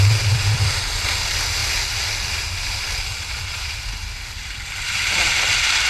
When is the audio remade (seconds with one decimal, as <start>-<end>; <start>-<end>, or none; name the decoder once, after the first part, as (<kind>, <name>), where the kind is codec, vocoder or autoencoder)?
0.0-1.6 (vocoder, BigVGAN v2); 4.3-5.9